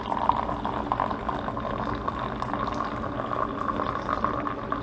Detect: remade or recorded recorded